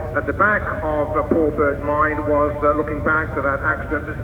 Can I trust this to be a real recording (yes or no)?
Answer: no